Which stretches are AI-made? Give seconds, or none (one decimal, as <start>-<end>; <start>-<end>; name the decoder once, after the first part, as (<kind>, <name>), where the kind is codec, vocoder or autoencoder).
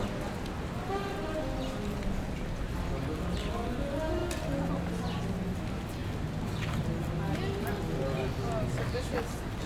none